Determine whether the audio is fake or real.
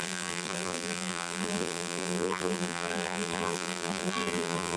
fake